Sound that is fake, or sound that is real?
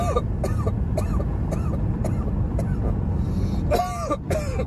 real